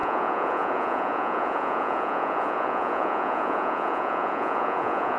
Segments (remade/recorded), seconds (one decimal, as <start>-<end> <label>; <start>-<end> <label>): 0.0-5.2 remade